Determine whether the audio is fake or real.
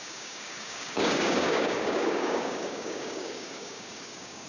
fake